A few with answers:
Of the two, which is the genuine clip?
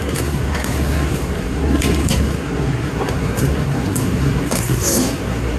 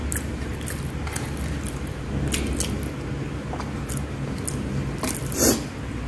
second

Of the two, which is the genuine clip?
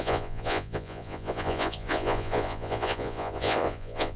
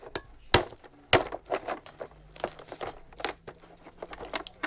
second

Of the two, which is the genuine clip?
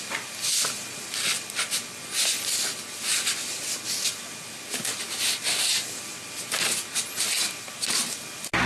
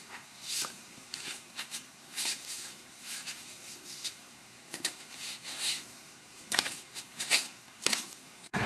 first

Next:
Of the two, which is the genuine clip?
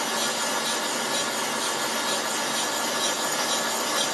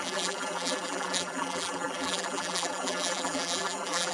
first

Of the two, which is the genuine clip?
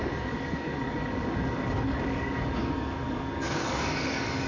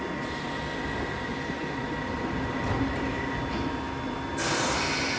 second